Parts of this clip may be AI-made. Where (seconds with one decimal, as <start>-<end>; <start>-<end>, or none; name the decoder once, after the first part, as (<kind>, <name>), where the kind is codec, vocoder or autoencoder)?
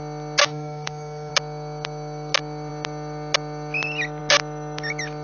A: 0.4-1.3 (codec, DAC)